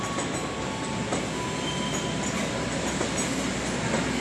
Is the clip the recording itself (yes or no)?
yes